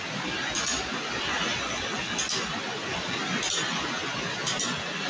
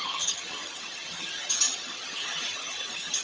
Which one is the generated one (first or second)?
second